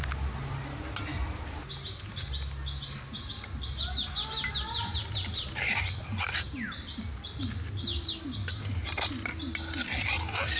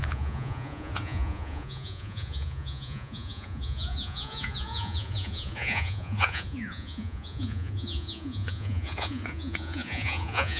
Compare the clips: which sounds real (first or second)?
first